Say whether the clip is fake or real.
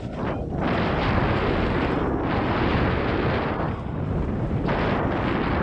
real